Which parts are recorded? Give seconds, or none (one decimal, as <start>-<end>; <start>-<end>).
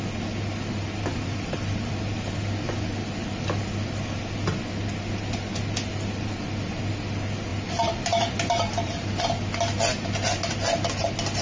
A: 0.0-1.1; 1.9-7.5; 9.2-11.4